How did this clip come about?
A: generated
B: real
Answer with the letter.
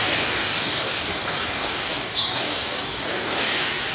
A